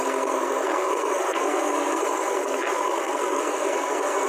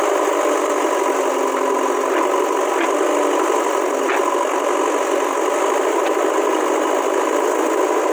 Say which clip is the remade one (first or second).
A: first